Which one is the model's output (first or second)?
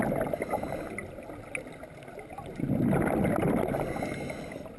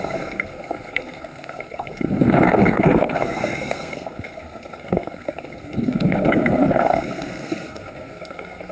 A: second